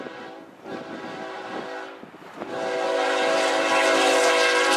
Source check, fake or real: real